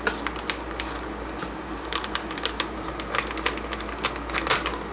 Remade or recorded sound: recorded